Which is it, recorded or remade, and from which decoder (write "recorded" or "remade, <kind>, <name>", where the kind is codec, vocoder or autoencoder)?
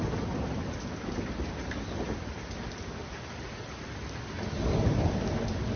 recorded